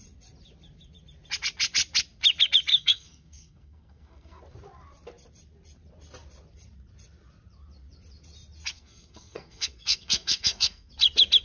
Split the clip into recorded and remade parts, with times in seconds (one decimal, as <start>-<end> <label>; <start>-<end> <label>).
0.0-2.7 recorded; 2.7-4.4 remade; 4.4-8.7 recorded; 8.7-10.9 remade; 10.9-11.4 recorded